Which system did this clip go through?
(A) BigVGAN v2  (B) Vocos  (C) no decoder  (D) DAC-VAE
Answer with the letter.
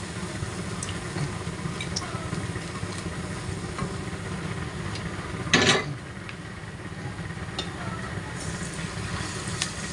C